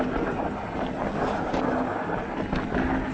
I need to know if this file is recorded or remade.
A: recorded